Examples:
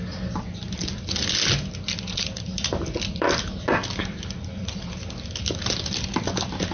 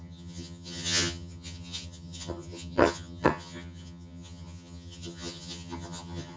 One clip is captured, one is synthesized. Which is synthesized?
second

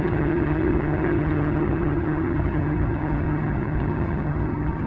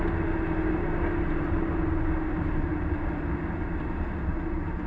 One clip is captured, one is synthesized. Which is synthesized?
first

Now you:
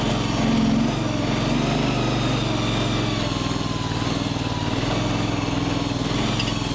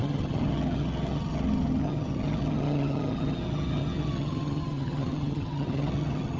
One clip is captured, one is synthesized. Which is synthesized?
second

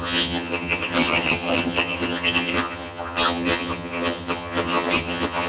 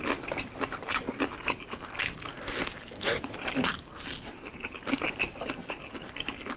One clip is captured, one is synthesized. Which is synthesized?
first